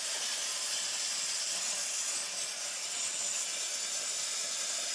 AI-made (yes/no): no